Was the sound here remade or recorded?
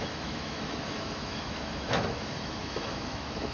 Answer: remade